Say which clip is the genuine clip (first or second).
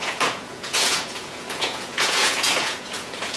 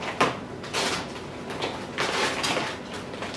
second